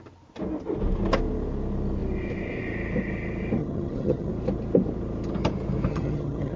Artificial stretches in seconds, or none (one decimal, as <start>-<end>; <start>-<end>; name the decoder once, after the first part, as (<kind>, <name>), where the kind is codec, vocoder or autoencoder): 3.6-4.3 (vocoder, HiFi-GAN); 5.9-6.6